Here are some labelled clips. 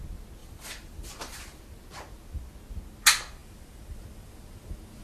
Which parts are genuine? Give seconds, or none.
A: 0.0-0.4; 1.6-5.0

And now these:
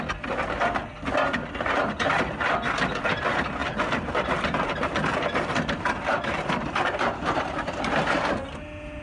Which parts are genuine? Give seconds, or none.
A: 0.0-3.6; 7.9-9.0

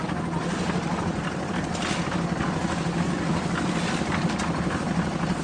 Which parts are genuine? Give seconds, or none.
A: 0.0-5.4

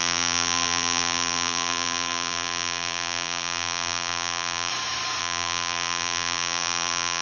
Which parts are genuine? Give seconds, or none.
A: 4.7-5.2

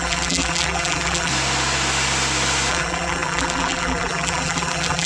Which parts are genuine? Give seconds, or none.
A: 1.3-2.7

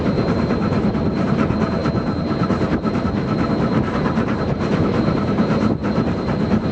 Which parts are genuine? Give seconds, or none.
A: 1.8-2.4